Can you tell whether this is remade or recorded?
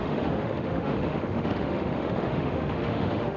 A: remade